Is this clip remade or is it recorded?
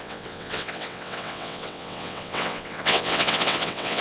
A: remade